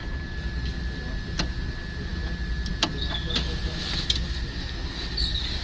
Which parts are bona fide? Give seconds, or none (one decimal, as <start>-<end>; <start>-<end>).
0.0-5.6